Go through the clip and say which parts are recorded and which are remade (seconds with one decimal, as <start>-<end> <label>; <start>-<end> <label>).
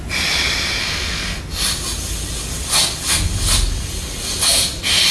0.0-0.8 recorded; 0.8-1.4 remade; 1.4-5.1 recorded